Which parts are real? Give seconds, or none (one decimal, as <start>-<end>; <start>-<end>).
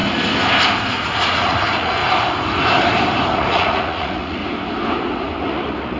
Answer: 0.0-0.9; 2.0-3.3; 4.4-5.4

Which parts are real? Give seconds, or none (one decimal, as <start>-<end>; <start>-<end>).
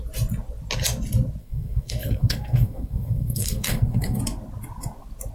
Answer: 0.0-1.4; 4.2-5.3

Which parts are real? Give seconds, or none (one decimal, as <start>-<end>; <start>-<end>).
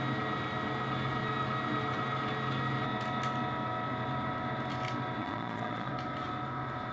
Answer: 0.0-5.2; 5.9-6.9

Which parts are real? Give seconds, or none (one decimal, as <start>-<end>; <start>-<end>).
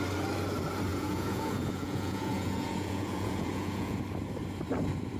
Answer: 0.0-0.9; 4.0-5.2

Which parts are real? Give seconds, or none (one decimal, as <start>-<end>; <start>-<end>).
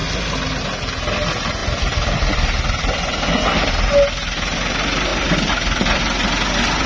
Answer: 0.0-1.6; 3.7-5.1; 6.0-6.9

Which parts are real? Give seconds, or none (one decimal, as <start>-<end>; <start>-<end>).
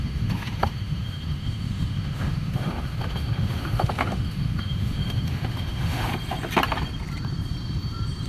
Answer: 6.1-8.3